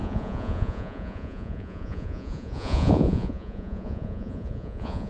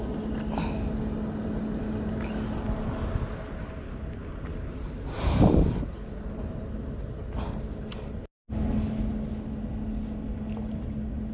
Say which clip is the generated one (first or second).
first